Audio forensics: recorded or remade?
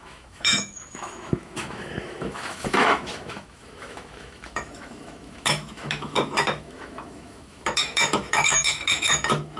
remade